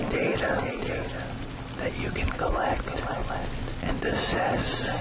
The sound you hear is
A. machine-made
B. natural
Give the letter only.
B